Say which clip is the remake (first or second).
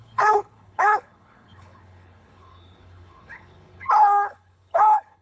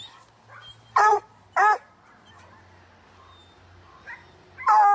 first